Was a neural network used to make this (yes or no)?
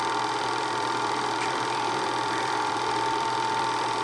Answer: yes